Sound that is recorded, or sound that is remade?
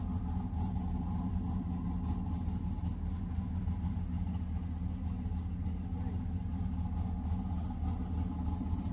recorded